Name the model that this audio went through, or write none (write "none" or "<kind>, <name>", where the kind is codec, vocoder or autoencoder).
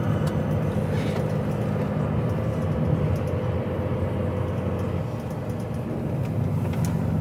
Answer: none